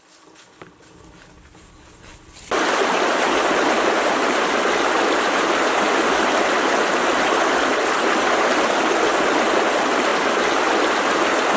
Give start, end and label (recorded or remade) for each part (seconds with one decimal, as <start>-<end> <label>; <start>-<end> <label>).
0.0-11.6 recorded